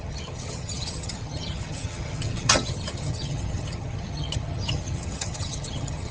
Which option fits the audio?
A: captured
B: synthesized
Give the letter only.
B